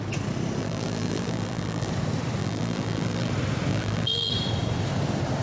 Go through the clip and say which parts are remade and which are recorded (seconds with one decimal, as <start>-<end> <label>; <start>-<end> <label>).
0.0-0.6 recorded; 0.6-1.9 remade; 1.9-2.4 recorded; 2.4-3.3 remade; 3.3-3.7 recorded; 3.7-4.3 remade; 4.3-5.4 recorded